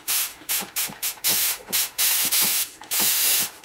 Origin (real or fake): fake